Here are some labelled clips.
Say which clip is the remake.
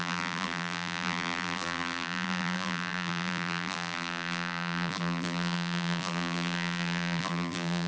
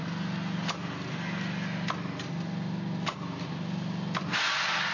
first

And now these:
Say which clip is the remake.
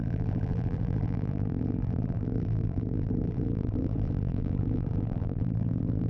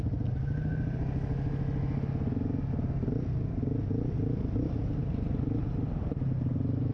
first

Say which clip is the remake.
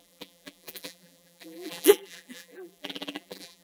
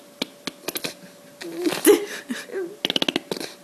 first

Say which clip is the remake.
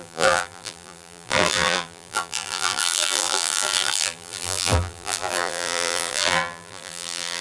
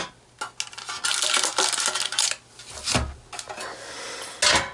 first